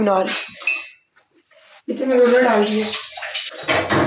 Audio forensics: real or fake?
real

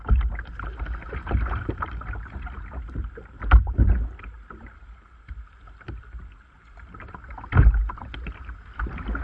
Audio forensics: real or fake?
real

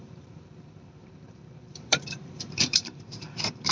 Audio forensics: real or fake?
fake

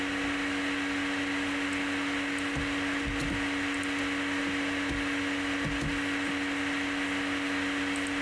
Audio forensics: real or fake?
real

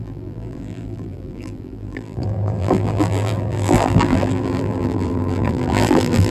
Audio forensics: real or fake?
fake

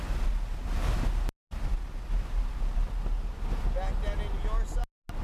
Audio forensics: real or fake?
real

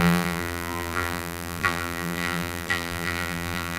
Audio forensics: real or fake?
fake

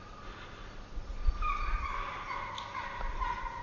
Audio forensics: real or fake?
real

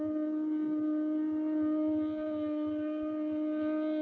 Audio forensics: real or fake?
real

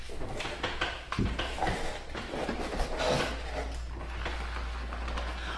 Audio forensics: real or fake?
real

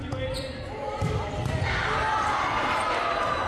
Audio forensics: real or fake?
fake